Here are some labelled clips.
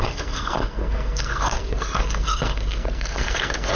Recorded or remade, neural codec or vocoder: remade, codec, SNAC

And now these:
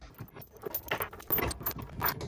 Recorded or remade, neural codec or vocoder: recorded